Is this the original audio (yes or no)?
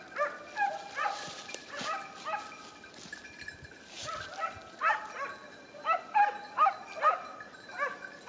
yes